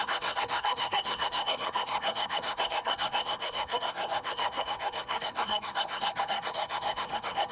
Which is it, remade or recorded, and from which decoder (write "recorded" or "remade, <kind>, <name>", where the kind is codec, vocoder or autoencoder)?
remade, codec, SNAC